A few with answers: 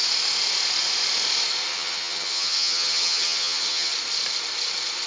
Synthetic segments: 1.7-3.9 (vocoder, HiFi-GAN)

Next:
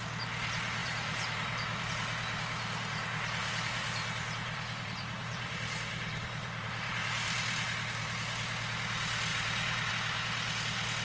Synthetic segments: 0.8-1.9 (vocoder, BigVGAN v2); 3.4-8.0; 9.3-9.9

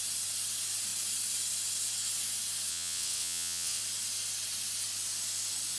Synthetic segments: 2.7-3.8 (vocoder, WaveNeXt)

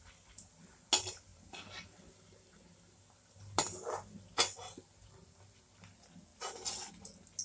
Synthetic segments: none

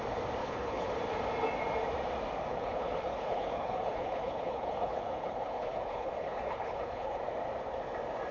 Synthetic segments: 0.4-0.9 (codec, HILCodec); 2.5-7.2

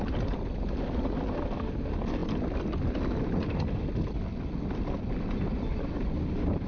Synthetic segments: 5.7-6.7 (vocoder, BigVGAN v2)

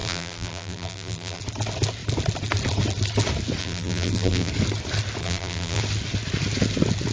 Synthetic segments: 0.0-1.4 (vocoder, BigVGAN v2); 3.6-4.5; 5.2-5.8

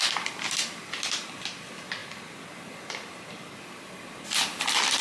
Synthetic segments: none